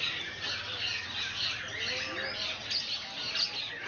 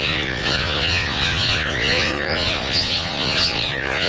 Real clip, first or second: first